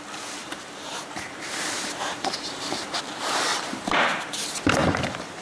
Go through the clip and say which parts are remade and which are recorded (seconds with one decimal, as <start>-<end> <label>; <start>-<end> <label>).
0.0-0.4 recorded; 0.4-3.0 remade; 3.0-3.5 recorded; 3.5-4.2 remade; 4.2-4.8 recorded; 4.8-5.4 remade